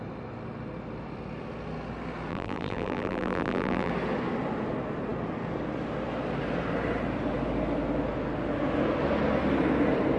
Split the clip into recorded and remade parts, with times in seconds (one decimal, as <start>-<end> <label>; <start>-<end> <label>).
0.0-2.3 recorded; 2.3-3.9 remade; 3.9-10.2 recorded